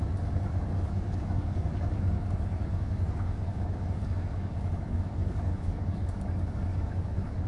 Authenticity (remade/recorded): remade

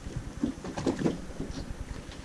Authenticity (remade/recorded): recorded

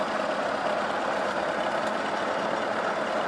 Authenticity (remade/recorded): recorded